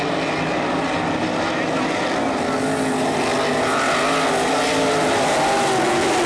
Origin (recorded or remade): recorded